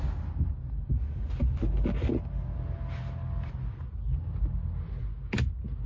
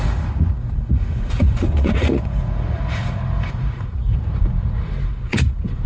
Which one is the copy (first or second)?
second